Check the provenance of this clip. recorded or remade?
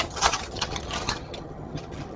remade